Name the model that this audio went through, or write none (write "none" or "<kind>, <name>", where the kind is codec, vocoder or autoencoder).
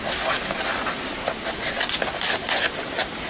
none